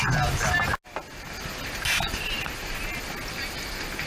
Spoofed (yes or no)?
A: no